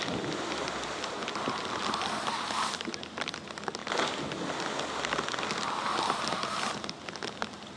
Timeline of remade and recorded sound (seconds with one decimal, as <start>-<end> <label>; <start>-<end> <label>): 0.0-7.8 recorded